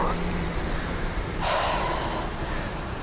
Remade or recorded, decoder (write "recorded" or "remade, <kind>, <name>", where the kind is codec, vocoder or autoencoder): remade, vocoder, BigVGAN v2